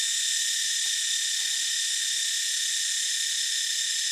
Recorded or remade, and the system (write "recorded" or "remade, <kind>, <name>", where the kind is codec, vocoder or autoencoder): recorded